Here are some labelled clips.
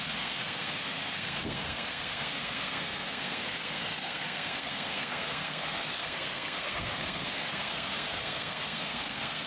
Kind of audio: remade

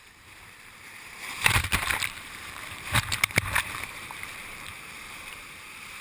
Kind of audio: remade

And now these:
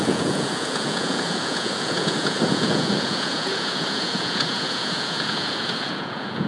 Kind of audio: remade